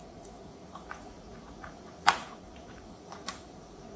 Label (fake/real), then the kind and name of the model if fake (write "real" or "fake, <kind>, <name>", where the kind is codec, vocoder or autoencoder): fake, vocoder, Vocos